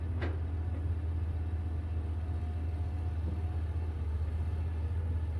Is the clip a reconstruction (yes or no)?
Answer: no